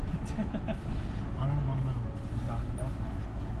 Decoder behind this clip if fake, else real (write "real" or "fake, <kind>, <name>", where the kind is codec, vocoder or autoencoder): real